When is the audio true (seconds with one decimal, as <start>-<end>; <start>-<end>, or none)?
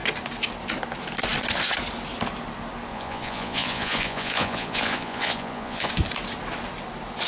0.0-2.9; 5.9-7.3